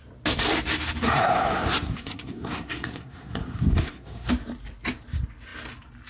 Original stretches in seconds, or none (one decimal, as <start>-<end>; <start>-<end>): 0.0-1.2; 4.3-6.1